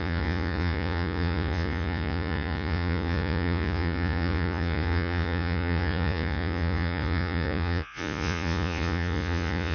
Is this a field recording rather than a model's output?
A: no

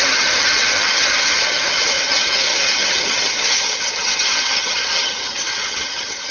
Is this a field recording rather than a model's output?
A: no